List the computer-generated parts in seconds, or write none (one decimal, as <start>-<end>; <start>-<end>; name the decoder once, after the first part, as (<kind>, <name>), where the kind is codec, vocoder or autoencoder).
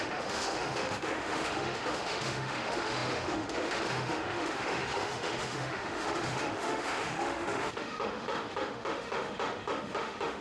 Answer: 0.0-10.4 (autoencoder, DAC-VAE)